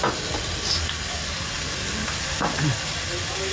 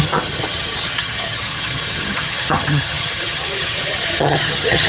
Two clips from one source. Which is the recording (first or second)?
first